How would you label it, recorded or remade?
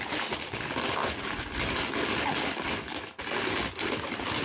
recorded